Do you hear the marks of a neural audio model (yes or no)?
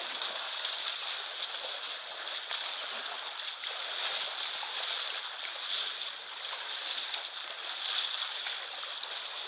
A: no